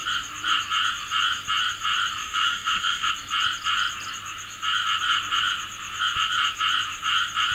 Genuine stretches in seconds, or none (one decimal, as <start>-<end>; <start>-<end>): 0.0-2.2; 3.1-7.5